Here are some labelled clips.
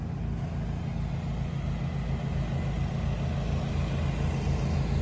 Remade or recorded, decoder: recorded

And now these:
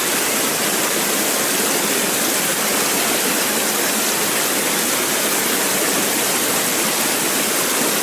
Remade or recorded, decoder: recorded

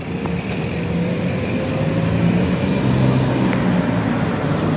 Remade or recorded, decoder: recorded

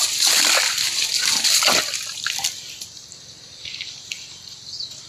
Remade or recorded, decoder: remade, vocoder, BigVGAN v2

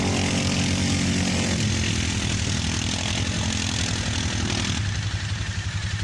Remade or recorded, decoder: recorded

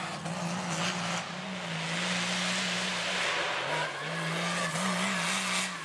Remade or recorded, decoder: recorded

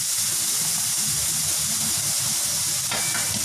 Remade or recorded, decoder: recorded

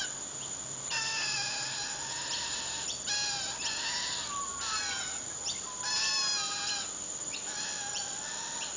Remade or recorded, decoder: recorded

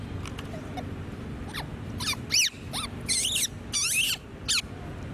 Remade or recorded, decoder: recorded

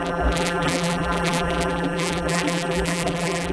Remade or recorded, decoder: remade, vocoder, BigVGAN v2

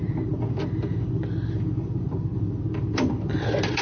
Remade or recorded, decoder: remade, vocoder, BigVGAN v2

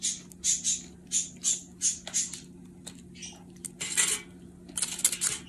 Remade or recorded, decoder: recorded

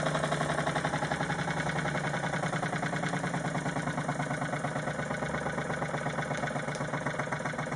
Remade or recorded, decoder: recorded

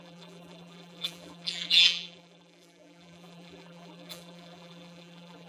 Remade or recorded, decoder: remade, vocoder, BigVGAN v2